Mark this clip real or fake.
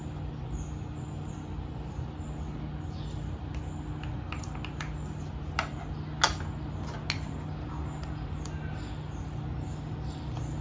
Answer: real